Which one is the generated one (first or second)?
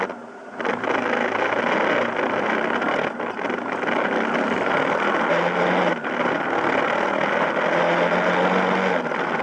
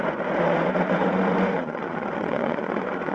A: second